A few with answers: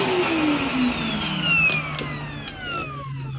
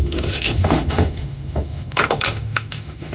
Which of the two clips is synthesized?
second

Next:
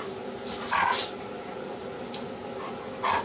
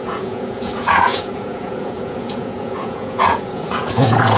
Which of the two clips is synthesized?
second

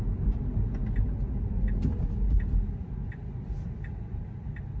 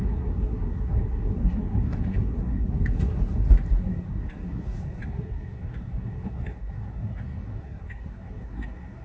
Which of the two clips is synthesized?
second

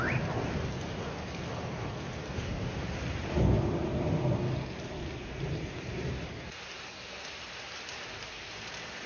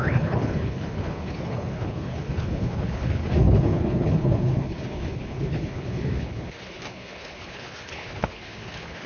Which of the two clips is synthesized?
second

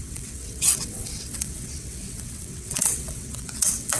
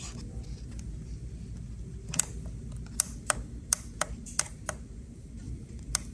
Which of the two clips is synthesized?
first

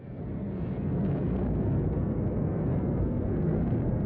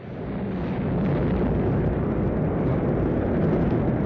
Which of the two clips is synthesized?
first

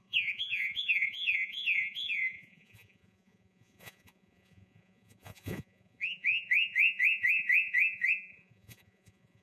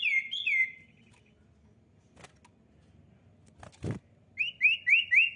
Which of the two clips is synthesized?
first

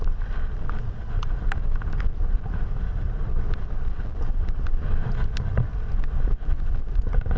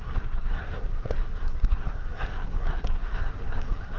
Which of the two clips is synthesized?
second